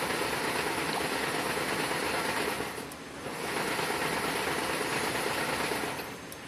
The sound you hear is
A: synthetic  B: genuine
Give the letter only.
B